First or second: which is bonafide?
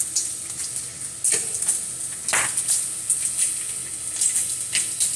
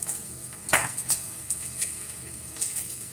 first